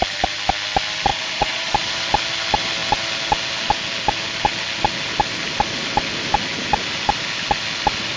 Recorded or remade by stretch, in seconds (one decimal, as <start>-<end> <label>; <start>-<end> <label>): 0.0-1.1 recorded; 1.1-1.7 remade; 1.7-8.2 recorded